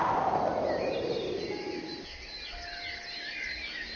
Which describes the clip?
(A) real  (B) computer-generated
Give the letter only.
A